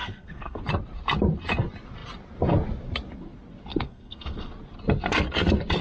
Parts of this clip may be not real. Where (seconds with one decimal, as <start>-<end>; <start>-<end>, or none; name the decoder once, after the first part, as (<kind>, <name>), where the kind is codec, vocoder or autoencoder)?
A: 0.0-0.6 (codec, SNAC); 3.7-4.5